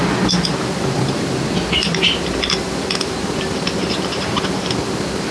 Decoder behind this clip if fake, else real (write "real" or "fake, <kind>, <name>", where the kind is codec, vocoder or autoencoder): real